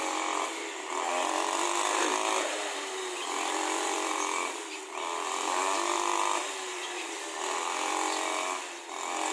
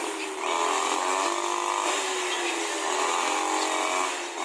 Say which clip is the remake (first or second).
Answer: first